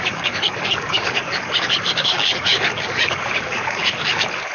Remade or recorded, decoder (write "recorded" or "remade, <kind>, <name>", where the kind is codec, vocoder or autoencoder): remade, codec, DAC